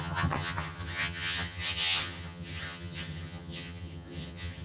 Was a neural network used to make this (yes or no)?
yes